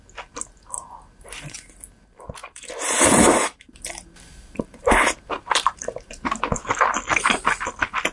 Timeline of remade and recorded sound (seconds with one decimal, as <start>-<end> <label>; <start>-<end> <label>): 0.0-2.4 recorded; 2.4-6.2 remade; 6.2-8.1 recorded